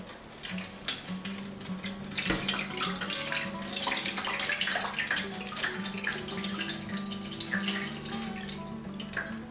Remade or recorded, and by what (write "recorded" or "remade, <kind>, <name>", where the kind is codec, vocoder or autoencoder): recorded